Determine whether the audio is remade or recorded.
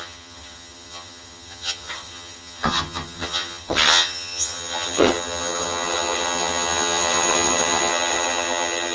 remade